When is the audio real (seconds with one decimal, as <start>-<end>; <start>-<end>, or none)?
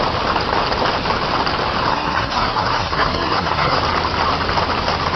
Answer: 0.0-1.9; 3.8-5.2